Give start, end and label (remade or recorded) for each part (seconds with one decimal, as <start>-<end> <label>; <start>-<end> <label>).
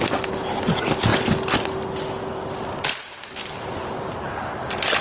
0.0-5.0 recorded